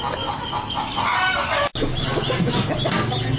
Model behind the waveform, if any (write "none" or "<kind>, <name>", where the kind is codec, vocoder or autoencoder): none